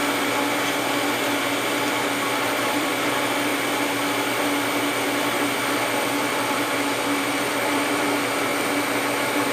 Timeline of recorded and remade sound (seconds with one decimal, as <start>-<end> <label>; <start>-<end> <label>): 0.0-2.3 recorded; 2.3-3.5 remade; 3.5-5.6 recorded; 5.6-8.5 remade; 8.5-9.1 recorded; 9.1-9.5 remade